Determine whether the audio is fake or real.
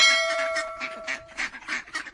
fake